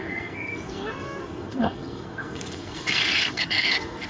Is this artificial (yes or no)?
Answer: yes